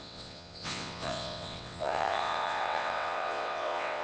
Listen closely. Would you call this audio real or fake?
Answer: fake